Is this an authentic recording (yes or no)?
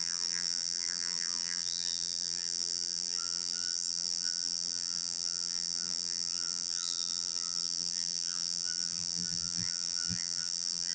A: no